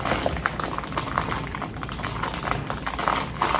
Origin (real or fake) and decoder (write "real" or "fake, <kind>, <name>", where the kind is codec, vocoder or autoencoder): real